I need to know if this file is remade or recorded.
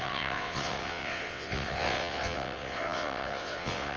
remade